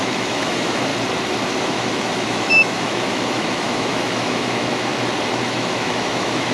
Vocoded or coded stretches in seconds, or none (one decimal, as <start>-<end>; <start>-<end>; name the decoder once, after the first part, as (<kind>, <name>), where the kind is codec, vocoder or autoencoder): 0.0-0.9 (autoencoder, DAC-VAE); 1.6-4.9; 5.5-6.5